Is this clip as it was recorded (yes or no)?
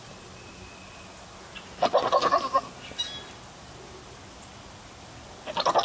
yes